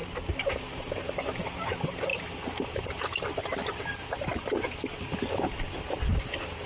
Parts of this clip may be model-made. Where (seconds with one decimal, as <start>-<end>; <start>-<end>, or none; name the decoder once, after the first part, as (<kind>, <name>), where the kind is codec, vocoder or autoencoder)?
none